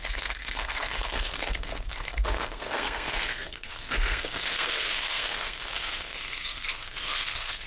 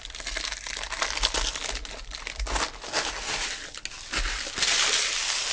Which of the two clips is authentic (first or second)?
second